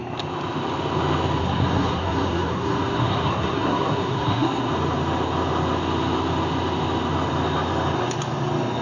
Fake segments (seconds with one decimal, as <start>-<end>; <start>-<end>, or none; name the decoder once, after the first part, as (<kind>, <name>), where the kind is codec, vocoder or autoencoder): 1.4-4.7 (codec, SNAC)